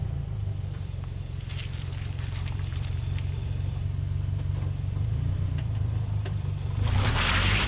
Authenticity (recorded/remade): remade